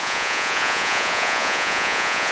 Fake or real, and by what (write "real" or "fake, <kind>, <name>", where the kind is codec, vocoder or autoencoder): fake, vocoder, Vocos